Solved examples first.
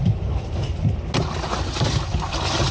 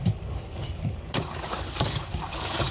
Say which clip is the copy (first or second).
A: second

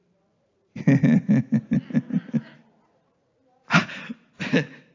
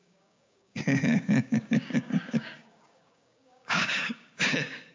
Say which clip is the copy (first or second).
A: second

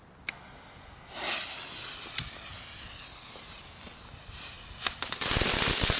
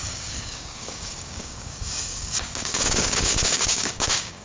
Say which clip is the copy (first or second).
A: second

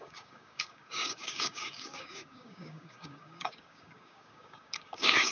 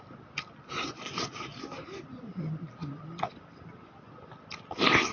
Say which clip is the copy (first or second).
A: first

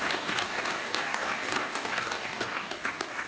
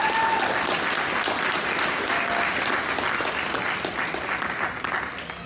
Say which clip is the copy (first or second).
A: first